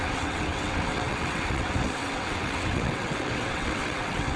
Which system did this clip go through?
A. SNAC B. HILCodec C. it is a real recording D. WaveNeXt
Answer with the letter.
D